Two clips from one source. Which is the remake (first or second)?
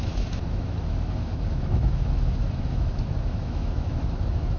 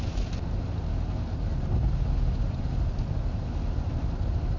first